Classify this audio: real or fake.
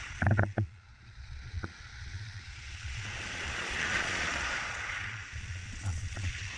fake